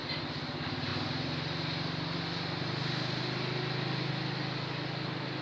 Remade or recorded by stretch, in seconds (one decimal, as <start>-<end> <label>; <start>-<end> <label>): 0.0-0.5 remade; 0.5-0.9 recorded; 0.9-4.1 remade; 4.1-5.4 recorded